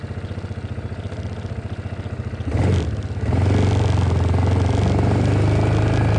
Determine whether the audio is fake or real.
real